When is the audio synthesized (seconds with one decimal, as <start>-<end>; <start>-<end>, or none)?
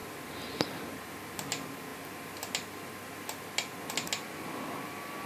none